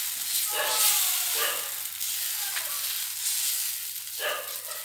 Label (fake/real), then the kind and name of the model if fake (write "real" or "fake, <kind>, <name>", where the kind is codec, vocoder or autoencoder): real